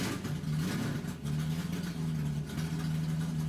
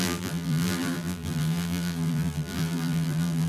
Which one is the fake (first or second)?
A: second